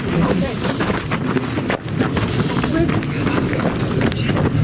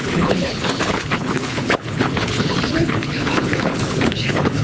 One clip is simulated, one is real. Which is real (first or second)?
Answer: first